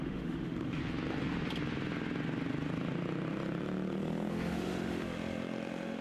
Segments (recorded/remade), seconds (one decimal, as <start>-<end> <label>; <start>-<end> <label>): 0.0-0.8 remade; 0.8-4.3 recorded; 4.3-6.0 remade